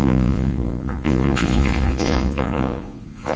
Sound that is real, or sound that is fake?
fake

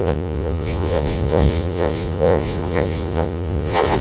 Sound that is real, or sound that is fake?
fake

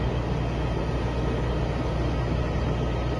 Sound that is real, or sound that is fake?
real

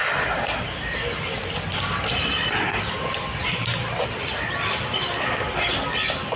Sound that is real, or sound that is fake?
real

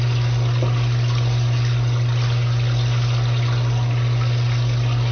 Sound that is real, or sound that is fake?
real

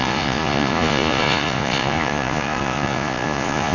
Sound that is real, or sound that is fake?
fake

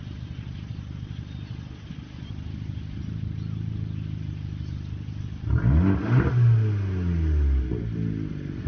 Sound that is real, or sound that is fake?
real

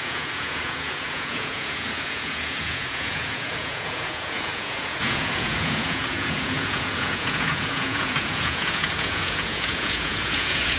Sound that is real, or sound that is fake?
fake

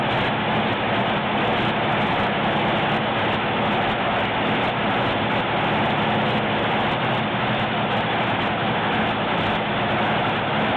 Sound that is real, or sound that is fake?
real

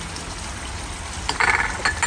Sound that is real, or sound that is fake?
real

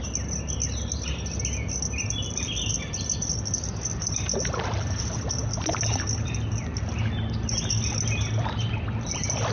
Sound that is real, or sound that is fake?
real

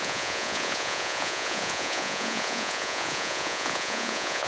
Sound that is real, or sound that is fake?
fake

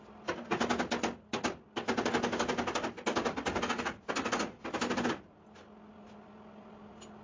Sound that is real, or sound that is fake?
real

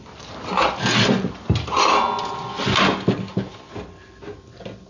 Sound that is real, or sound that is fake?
real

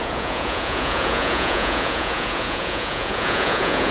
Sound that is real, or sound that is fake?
fake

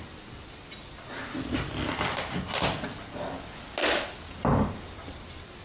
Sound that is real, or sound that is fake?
real